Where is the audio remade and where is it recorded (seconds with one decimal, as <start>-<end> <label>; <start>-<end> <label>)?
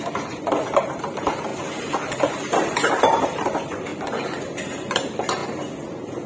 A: 0.0-1.5 remade; 1.5-2.1 recorded; 2.1-3.9 remade; 3.9-4.6 recorded; 4.6-5.4 remade; 5.4-6.3 recorded